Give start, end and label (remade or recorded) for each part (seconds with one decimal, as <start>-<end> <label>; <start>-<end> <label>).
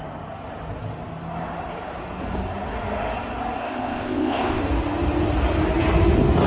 0.0-3.6 recorded; 3.6-4.6 remade; 4.6-6.5 recorded